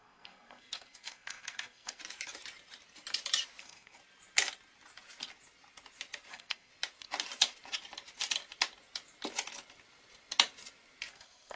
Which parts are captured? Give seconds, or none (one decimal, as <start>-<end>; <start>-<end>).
2.0-3.6; 4.0-6.3; 6.7-11.1